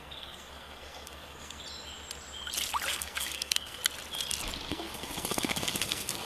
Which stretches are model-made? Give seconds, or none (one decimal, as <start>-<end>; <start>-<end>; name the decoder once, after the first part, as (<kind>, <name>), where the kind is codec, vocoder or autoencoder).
0.0-1.6 (codec, SNAC); 2.9-3.8; 4.7-6.3